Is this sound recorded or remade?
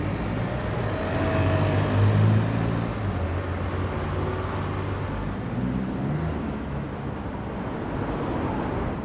recorded